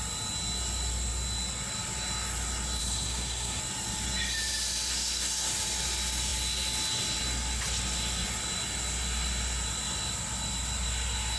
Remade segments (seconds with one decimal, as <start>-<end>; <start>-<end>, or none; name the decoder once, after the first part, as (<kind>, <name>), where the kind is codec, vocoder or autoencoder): 2.8-3.6 (codec, SNAC); 4.9-5.5